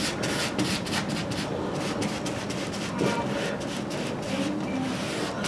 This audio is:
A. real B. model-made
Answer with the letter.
A